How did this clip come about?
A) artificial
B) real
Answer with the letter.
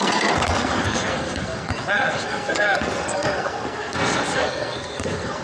A